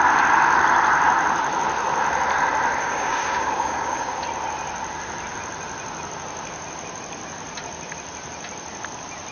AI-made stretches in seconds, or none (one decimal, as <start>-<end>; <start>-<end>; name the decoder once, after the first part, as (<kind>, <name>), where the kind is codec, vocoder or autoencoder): 2.8-4.2 (codec, DAC)